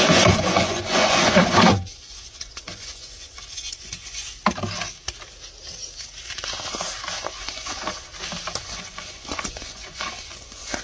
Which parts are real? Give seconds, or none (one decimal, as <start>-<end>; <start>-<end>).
4.4-7.2; 8.1-8.6